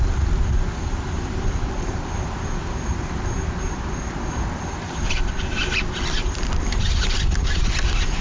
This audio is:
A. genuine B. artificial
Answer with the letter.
A